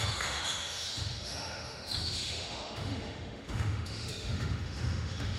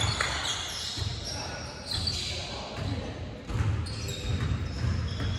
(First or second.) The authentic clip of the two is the second